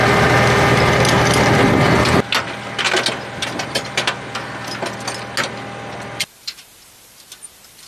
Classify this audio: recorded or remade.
recorded